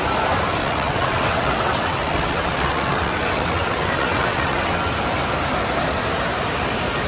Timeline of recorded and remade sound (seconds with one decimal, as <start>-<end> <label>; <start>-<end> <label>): 0.0-0.6 recorded; 0.6-4.9 remade; 4.9-7.1 recorded